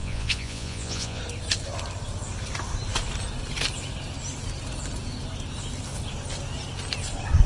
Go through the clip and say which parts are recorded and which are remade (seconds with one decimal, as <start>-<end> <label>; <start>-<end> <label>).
0.0-1.2 remade; 1.2-7.5 recorded